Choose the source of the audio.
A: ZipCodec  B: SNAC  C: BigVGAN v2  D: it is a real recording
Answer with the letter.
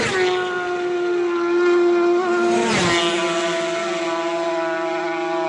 D